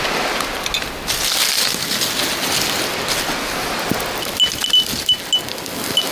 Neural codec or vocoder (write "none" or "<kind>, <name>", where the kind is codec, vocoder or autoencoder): none